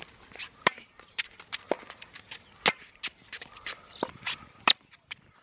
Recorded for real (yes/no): yes